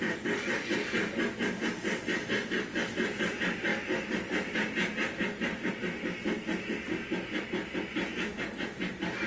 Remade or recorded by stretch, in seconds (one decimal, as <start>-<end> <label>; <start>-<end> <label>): 0.0-9.3 recorded